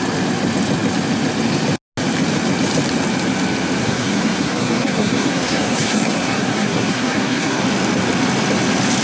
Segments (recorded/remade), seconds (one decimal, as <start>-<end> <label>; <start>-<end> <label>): 0.0-3.8 recorded; 3.8-7.6 remade; 7.6-9.0 recorded